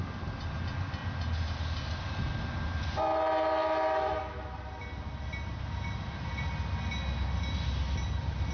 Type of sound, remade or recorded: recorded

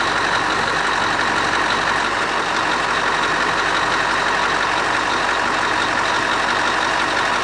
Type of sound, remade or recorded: recorded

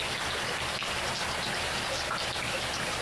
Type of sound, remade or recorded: recorded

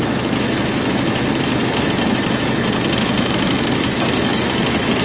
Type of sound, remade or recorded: remade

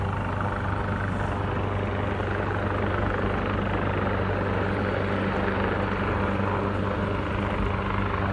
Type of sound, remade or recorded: recorded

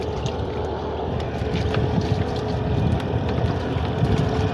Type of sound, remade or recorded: recorded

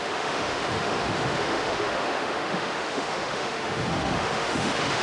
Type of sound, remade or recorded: remade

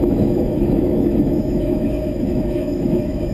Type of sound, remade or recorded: remade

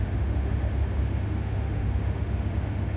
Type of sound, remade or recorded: remade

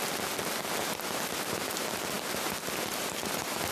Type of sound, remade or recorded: recorded